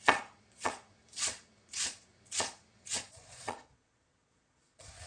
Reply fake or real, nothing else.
fake